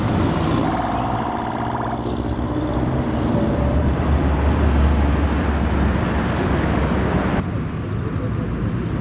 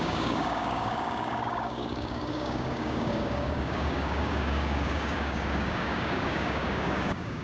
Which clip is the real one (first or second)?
first